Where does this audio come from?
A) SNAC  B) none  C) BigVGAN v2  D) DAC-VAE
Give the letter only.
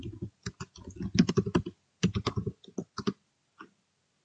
B